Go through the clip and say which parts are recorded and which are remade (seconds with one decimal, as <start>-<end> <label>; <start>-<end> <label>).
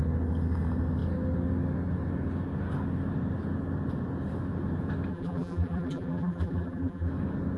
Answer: 0.0-5.1 recorded; 5.1-7.1 remade; 7.1-7.6 recorded